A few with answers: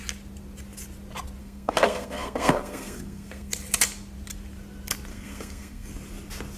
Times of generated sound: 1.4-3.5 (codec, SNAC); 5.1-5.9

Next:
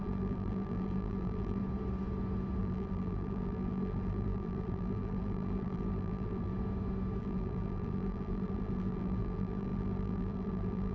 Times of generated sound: 0.0-1.6 (vocoder, BigVGAN v2); 2.6-6.5; 7.2-10.9

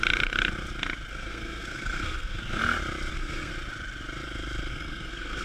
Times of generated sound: 1.1-2.6 (codec, SNAC); 3.1-3.5; 4.7-5.4